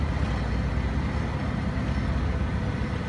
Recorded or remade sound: recorded